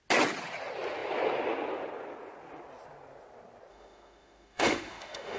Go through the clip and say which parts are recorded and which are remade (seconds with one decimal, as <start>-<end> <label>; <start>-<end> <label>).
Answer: 0.0-3.7 recorded; 3.7-5.4 remade